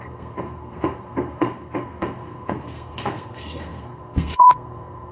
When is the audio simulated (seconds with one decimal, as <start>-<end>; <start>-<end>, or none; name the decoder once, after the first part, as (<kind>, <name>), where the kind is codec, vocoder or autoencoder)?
0.0-5.1 (codec, SNAC)